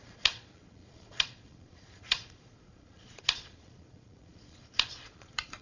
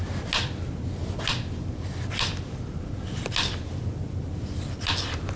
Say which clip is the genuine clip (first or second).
second